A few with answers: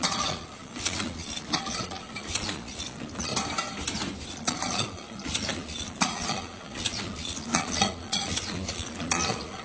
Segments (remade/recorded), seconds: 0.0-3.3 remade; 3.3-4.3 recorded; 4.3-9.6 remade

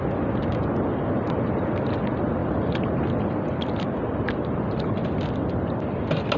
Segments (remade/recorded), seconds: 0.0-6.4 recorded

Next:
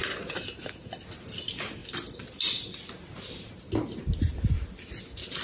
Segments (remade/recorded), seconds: 0.0-5.4 recorded

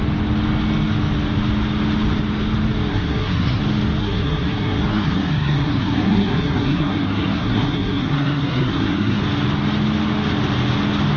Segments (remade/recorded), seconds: 0.0-2.9 recorded; 2.9-3.6 remade; 3.6-4.0 recorded; 4.0-9.2 remade; 9.2-11.2 recorded

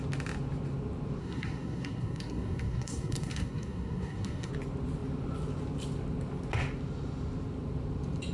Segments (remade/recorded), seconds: 0.0-1.2 recorded; 1.2-4.5 remade; 4.5-8.3 recorded

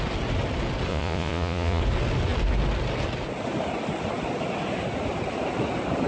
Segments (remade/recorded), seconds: 0.0-0.9 recorded; 0.9-1.8 remade; 1.8-6.1 recorded

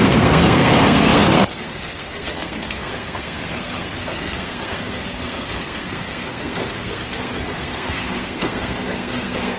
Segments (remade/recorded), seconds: 0.0-9.6 remade

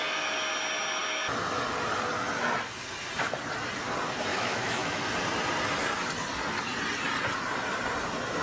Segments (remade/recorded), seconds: 0.0-4.3 recorded; 4.3-5.0 remade; 5.0-8.4 recorded